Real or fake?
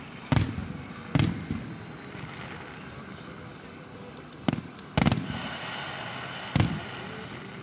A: real